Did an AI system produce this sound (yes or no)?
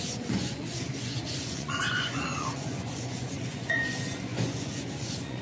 yes